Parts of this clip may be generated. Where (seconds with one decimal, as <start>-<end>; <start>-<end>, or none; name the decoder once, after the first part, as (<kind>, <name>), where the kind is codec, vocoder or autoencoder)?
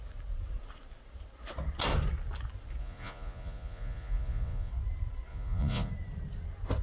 2.8-4.7 (vocoder, Vocos); 5.3-5.9